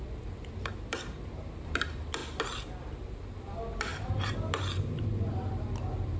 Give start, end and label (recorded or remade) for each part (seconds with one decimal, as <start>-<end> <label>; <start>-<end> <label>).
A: 0.0-2.2 remade; 2.2-2.8 recorded; 2.8-3.9 remade; 3.9-5.0 recorded; 5.0-6.2 remade